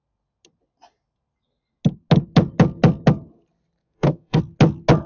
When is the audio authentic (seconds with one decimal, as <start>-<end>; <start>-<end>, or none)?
0.0-3.8; 4.4-5.1